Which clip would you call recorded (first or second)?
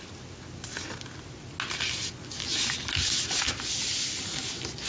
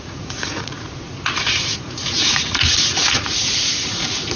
first